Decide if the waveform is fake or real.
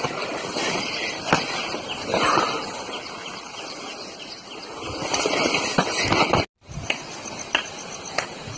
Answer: real